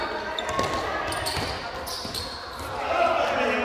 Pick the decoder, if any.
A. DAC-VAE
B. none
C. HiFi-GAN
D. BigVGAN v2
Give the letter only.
B